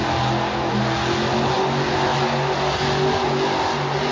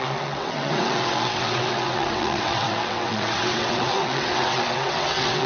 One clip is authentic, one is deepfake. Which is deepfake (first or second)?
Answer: second